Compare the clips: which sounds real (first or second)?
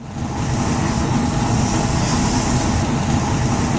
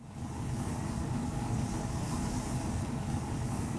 first